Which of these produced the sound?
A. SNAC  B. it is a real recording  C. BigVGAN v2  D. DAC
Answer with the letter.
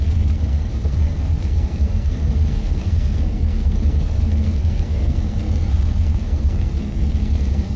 A